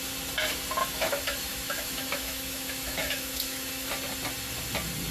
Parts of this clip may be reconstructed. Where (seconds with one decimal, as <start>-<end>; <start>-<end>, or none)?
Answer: 0.8-3.9